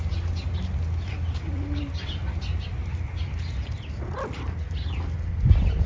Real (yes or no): yes